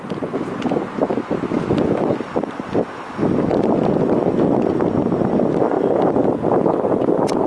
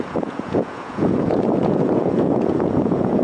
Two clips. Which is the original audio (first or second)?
first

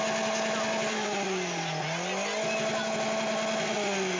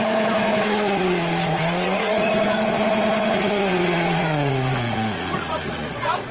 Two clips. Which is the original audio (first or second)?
first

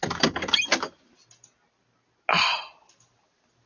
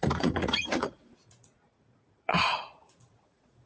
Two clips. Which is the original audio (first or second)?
first